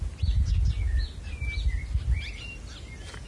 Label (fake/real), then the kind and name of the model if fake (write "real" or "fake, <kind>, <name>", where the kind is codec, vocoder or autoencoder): real